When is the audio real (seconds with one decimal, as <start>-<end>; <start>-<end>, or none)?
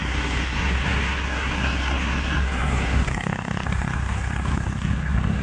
none